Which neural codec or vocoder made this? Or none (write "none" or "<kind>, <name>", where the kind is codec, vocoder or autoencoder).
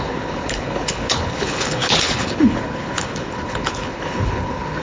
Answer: codec, HILCodec